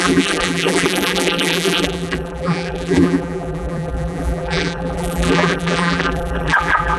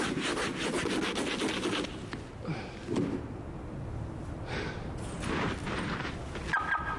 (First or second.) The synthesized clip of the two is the first